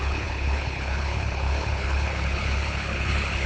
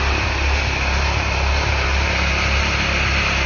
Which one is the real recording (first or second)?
second